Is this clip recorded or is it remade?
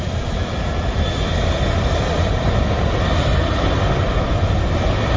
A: recorded